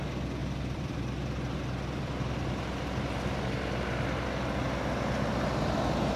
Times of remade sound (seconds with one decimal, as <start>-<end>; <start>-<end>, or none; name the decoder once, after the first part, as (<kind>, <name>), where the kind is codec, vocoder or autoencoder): 0.4-4.1 (vocoder, BigVGAN v2)